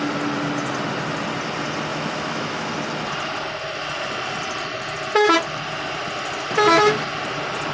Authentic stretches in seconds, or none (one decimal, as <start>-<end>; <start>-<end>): 0.0-1.9; 2.7-7.7